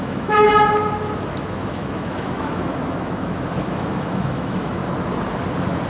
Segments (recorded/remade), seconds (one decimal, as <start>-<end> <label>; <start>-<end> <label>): 0.0-0.5 remade; 0.5-1.2 recorded; 1.2-4.8 remade; 4.8-5.9 recorded